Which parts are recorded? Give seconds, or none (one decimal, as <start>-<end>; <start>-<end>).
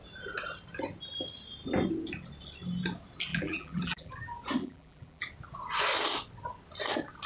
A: 0.0-3.3; 4.1-4.6; 5.2-7.3